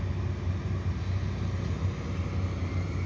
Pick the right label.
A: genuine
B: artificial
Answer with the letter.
A